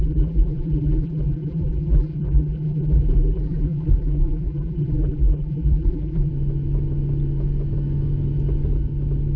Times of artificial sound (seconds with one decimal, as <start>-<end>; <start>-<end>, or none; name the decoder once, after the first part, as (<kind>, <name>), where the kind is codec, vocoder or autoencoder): 0.0-6.3 (vocoder, BigVGAN v2)